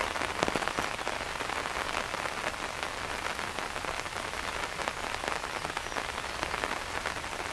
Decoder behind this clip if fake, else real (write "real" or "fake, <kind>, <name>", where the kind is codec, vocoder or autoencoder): real